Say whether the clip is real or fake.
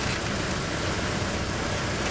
real